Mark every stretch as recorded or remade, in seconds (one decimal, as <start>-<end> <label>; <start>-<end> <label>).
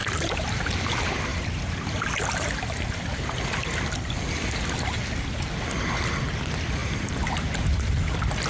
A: 0.0-0.8 remade; 0.8-6.8 recorded; 6.8-7.7 remade; 7.7-8.5 recorded